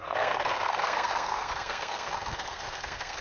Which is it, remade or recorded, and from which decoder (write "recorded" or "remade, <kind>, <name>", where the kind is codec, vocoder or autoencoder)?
remade, codec, SNAC